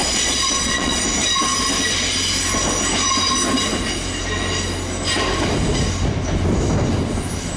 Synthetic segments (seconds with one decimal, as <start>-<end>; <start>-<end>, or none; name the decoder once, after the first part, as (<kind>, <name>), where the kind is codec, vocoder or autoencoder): 0.0-1.0 (vocoder, Vocos)